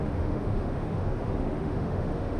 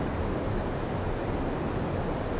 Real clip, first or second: second